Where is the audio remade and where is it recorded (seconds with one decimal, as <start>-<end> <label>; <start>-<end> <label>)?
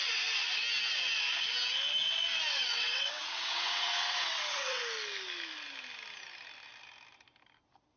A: 0.0-2.5 recorded; 2.5-4.8 remade; 4.8-8.0 recorded